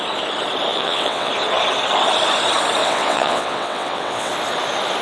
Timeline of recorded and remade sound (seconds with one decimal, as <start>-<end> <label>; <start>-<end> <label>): 0.0-0.7 recorded; 0.7-1.3 remade; 1.3-2.8 recorded; 2.8-4.3 remade; 4.3-5.0 recorded